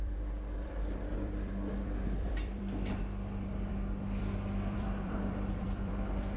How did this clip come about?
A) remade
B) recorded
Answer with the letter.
A